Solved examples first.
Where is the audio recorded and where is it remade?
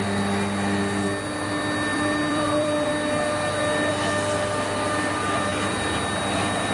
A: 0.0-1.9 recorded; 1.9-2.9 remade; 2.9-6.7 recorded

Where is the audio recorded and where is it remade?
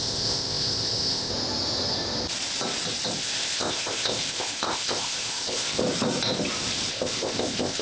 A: 0.0-1.3 remade; 1.3-3.2 recorded; 3.2-5.8 remade; 5.8-6.9 recorded; 6.9-7.8 remade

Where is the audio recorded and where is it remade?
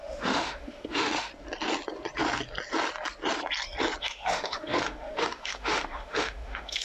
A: 0.0-1.3 remade; 1.3-4.0 recorded; 4.0-6.8 remade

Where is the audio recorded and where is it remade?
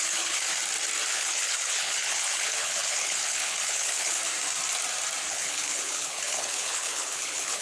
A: 0.0-0.5 remade; 0.5-1.1 recorded; 1.1-4.2 remade; 4.2-5.3 recorded; 5.3-7.6 remade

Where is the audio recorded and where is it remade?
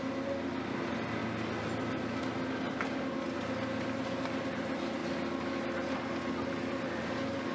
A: 0.0-7.5 recorded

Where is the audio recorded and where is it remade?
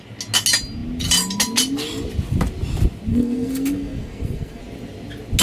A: 0.0-3.1 recorded; 3.1-4.6 remade; 4.6-5.4 recorded